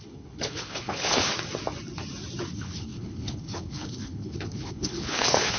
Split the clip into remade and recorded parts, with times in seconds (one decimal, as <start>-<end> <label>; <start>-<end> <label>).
0.0-1.3 remade; 1.3-2.5 recorded; 2.5-5.6 remade